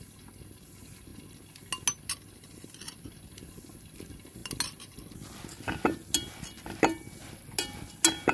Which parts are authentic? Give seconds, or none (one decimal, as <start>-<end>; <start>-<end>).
0.0-8.3